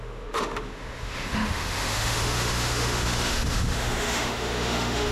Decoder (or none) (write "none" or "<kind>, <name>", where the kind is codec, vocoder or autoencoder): autoencoder, DAC-VAE